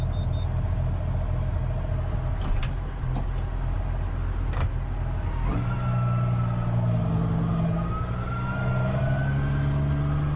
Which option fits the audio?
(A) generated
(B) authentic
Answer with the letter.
B